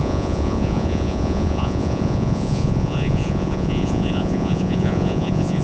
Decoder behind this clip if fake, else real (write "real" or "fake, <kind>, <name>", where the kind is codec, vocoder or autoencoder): fake, vocoder, Vocos